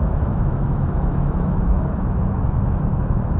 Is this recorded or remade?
remade